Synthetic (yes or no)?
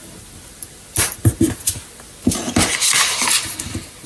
no